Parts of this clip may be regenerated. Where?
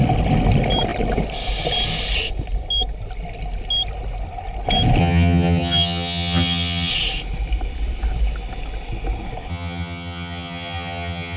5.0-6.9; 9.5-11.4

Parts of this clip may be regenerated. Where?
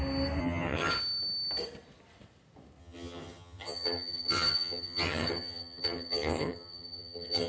0.4-0.9; 2.8-7.5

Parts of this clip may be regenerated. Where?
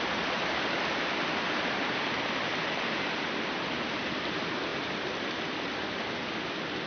none